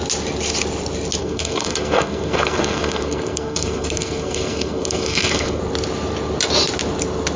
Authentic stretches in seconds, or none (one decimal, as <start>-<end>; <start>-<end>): 0.0-1.2; 5.6-7.4